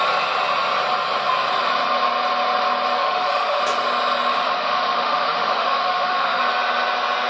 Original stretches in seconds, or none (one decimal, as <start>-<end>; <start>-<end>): 0.0-3.0; 3.6-4.3; 6.4-7.3